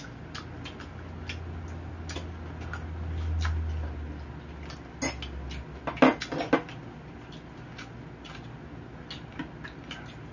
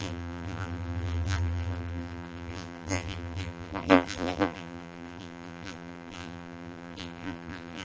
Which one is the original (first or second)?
first